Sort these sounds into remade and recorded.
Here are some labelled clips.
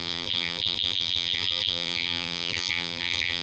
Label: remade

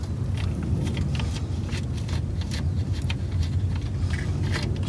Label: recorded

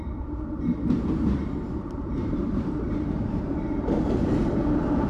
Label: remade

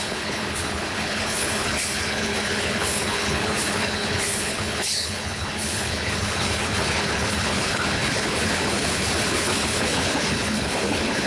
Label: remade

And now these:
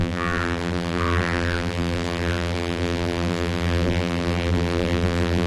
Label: remade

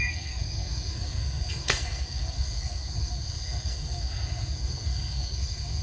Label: remade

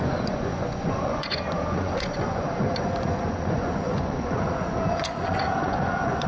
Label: remade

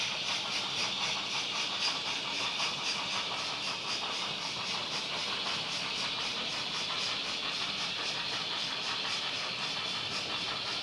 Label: remade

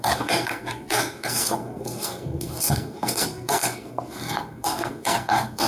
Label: remade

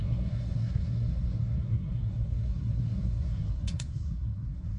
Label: remade